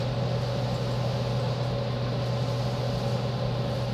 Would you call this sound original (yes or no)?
yes